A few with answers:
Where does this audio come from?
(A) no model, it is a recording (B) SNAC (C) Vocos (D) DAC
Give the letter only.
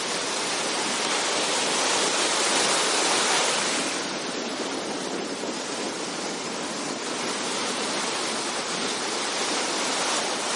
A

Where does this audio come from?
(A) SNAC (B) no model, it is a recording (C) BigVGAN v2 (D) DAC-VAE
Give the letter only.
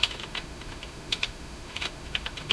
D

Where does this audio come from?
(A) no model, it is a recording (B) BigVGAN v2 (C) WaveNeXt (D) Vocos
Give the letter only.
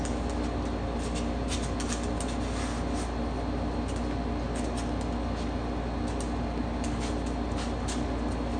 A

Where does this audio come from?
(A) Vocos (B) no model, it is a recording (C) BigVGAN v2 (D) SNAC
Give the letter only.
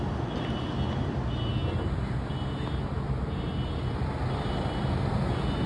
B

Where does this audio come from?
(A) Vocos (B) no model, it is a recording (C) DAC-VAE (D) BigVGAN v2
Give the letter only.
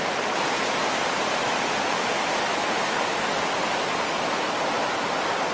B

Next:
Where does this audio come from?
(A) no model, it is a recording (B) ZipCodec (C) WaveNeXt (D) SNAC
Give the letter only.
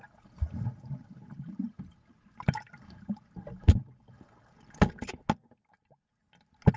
A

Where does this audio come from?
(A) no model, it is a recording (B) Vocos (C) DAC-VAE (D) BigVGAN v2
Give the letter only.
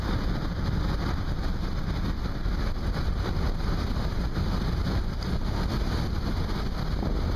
A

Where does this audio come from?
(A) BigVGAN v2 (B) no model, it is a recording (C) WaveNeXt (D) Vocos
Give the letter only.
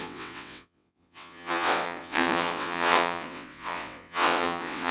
C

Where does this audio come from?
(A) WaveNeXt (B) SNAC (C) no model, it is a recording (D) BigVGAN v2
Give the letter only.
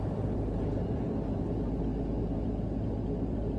C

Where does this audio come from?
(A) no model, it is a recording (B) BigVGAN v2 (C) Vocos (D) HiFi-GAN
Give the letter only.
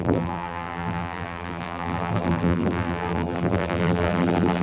B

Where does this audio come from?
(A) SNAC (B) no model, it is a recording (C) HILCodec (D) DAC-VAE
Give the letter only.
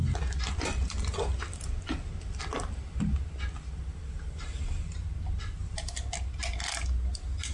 B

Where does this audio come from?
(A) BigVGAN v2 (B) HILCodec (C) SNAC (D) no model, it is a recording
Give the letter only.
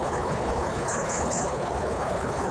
B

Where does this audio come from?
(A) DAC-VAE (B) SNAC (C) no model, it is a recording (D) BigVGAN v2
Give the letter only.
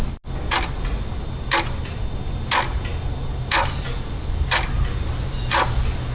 C